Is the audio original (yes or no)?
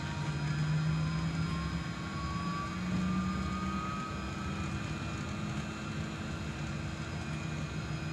yes